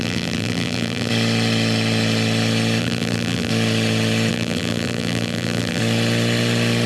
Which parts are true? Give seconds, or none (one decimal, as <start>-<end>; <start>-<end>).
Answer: 1.1-2.8; 3.5-4.3; 5.8-6.9